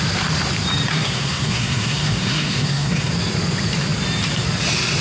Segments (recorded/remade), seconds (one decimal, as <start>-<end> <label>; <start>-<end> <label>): 0.0-0.9 recorded; 0.9-3.1 remade; 3.1-5.0 recorded

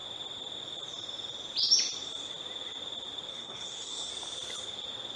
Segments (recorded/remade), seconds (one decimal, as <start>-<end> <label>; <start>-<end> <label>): 0.0-3.3 recorded; 3.3-4.1 remade; 4.1-5.2 recorded

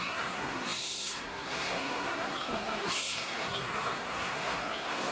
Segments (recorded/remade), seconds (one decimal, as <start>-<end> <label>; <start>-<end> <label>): 0.0-5.1 remade

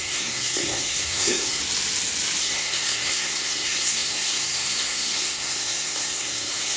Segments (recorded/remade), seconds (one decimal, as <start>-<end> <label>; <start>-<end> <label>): 0.0-1.6 remade; 1.6-2.4 recorded; 2.4-6.8 remade

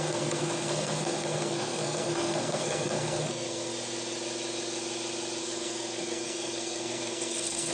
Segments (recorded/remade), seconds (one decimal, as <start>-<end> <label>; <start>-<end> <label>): 0.0-3.7 remade; 3.7-5.4 recorded; 5.4-7.7 remade

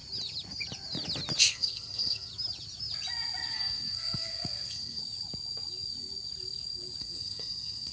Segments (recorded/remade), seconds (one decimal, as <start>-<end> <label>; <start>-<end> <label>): 0.0-1.5 recorded; 1.5-2.3 remade; 2.3-3.5 recorded; 3.5-5.0 remade; 5.0-7.0 recorded; 7.0-7.9 remade

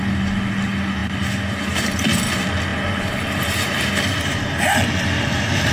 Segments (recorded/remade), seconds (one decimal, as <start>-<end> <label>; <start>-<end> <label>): 0.0-5.7 recorded